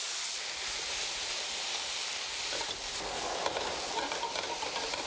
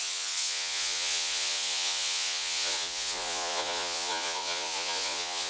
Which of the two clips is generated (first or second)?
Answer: second